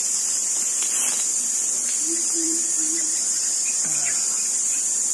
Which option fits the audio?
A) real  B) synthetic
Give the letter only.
B